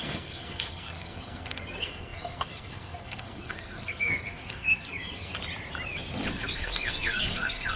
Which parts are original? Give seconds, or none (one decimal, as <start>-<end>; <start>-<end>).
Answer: 5.3-6.3